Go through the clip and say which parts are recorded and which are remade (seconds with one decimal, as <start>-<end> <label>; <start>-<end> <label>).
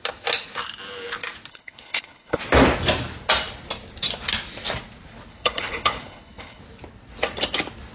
0.0-1.5 recorded; 1.5-2.4 remade; 2.4-5.3 recorded; 5.3-6.6 remade; 6.6-7.9 recorded